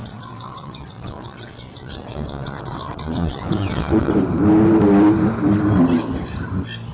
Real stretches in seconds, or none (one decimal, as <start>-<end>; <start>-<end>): 4.1-6.9